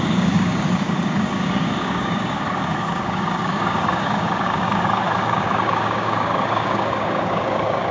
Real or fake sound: fake